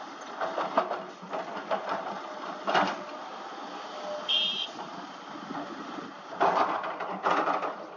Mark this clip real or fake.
real